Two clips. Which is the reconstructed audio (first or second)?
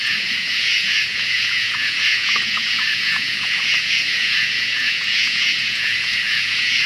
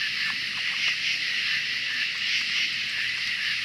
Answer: first